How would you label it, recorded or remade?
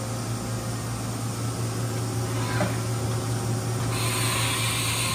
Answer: recorded